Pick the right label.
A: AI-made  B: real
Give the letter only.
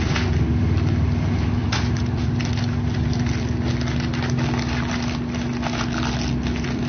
B